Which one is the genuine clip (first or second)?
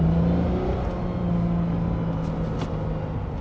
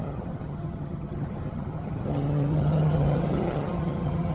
first